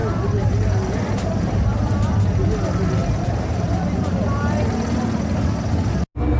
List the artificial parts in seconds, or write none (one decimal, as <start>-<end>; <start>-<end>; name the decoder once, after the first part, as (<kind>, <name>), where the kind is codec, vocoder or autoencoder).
0.0-1.5 (vocoder, BigVGAN v2); 3.0-4.1